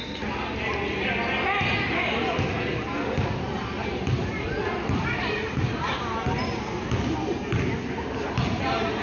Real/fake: real